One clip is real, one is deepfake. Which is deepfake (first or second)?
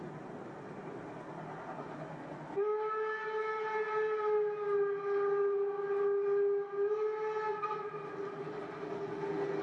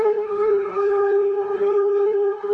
second